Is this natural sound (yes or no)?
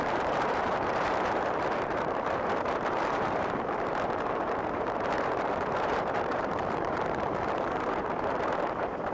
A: no